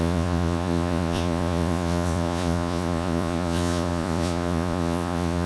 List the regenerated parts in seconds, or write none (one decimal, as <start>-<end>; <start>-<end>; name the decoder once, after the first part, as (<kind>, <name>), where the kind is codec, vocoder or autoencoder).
0.0-5.5 (vocoder, Vocos)